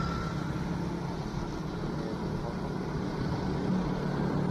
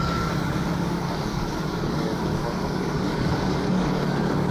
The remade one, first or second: second